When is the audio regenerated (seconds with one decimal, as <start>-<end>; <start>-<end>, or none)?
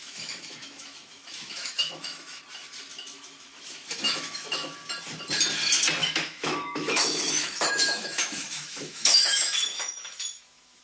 0.0-2.4; 2.9-4.7; 6.0-10.8